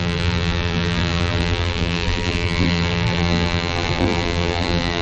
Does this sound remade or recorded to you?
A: remade